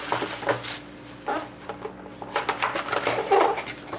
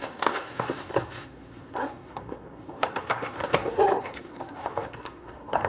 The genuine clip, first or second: first